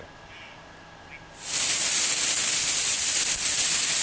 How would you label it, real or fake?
real